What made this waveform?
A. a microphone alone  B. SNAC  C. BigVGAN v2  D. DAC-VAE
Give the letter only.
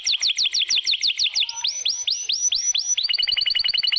A